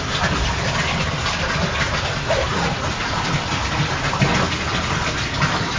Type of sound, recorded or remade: recorded